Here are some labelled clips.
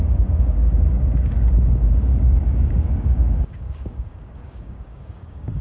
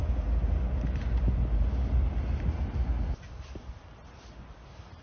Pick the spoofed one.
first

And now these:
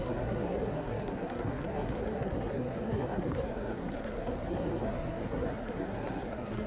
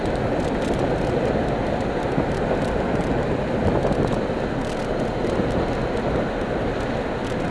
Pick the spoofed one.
first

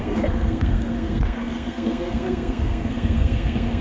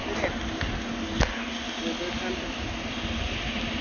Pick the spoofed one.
first